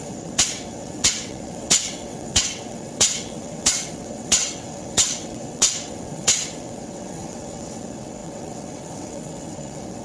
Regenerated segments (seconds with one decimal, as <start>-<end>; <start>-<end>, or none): 0.0-10.0